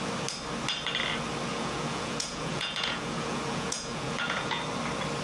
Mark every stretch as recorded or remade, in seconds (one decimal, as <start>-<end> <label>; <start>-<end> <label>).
0.0-1.5 recorded; 1.5-4.6 remade; 4.6-5.2 recorded

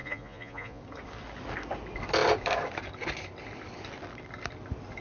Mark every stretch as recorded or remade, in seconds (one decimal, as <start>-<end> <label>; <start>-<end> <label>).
0.0-0.8 remade; 0.8-5.0 recorded

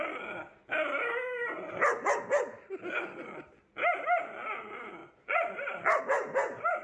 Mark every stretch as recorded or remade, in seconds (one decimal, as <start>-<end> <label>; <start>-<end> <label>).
0.0-5.0 recorded; 5.0-6.0 remade; 6.0-6.8 recorded

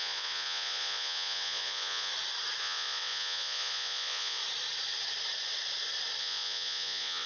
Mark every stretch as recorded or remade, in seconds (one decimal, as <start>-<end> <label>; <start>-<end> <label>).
0.0-2.1 remade; 2.1-2.6 recorded; 2.6-4.4 remade; 4.4-6.2 recorded; 6.2-7.3 remade

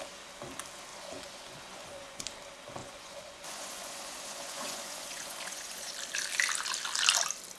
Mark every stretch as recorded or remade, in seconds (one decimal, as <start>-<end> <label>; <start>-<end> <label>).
0.0-0.9 recorded; 0.9-2.2 remade; 2.2-2.8 recorded; 2.8-5.9 remade; 5.9-7.6 recorded